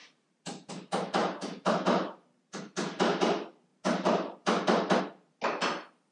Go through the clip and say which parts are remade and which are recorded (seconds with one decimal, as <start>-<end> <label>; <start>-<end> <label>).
0.0-0.7 remade; 0.7-1.2 recorded; 1.2-2.6 remade; 2.6-3.7 recorded; 3.7-5.0 remade; 5.0-6.1 recorded